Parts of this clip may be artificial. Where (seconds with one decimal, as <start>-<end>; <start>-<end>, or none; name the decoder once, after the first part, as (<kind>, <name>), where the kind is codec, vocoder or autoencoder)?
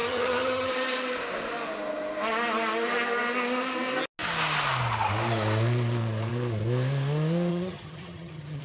0.0-0.7 (vocoder, HiFi-GAN); 7.5-8.6